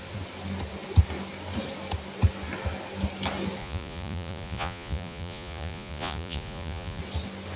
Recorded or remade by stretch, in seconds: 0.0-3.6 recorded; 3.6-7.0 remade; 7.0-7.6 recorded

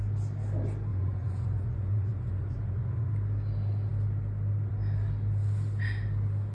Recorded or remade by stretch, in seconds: 0.0-0.9 recorded; 0.9-3.1 remade; 3.1-6.5 recorded

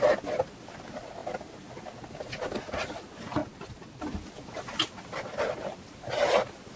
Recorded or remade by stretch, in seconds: 0.0-6.8 recorded

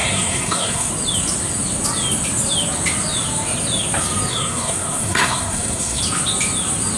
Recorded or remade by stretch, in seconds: 0.0-0.9 remade; 0.9-4.3 recorded; 4.3-6.0 remade; 6.0-7.0 recorded

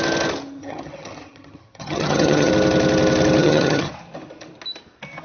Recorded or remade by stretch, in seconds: 0.0-0.6 recorded; 0.6-2.5 remade; 2.5-3.4 recorded; 3.4-3.9 remade; 3.9-5.2 recorded

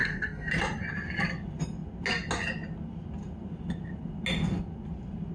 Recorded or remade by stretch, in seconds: 0.0-0.5 remade; 0.5-5.3 recorded

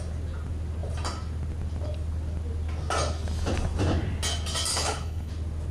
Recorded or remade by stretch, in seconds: 0.0-4.7 recorded; 4.7-5.3 remade; 5.3-5.7 recorded